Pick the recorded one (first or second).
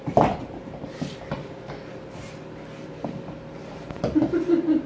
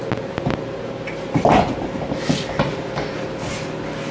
second